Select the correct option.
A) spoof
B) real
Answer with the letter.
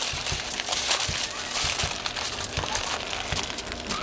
B